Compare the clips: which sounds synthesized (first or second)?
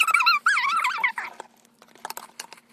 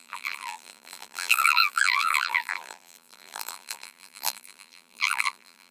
second